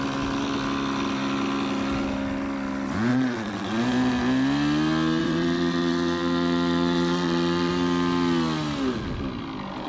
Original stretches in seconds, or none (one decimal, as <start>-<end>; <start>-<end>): 0.0-3.1; 3.8-5.2; 7.7-9.9